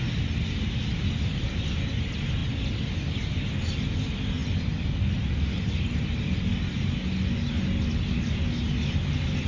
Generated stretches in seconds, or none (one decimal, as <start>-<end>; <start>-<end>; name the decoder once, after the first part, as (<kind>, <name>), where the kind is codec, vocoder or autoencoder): none